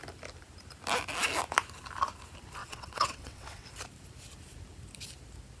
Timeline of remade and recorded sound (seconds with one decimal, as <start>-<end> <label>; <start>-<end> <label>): 0.0-2.6 recorded; 2.6-3.7 remade; 3.7-5.6 recorded